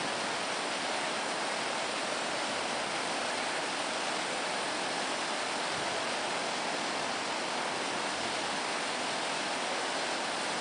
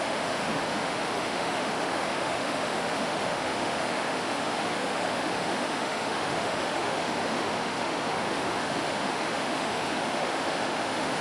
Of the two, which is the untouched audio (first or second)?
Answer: first